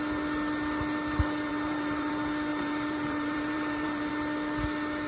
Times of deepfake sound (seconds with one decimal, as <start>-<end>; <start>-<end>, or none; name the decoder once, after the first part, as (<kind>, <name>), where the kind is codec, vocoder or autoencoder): 1.5-2.1 (vocoder, BigVGAN v2); 2.5-4.1